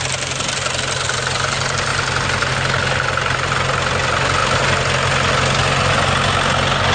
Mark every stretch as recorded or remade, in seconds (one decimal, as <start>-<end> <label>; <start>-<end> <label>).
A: 0.0-6.9 recorded